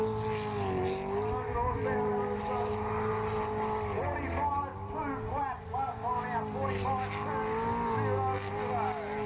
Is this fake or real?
real